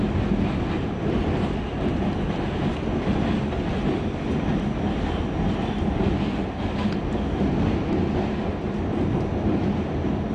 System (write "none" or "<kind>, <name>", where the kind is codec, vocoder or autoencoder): none